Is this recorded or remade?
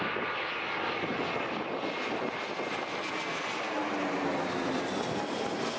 recorded